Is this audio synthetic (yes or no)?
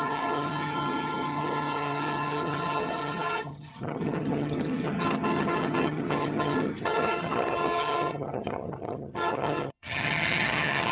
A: yes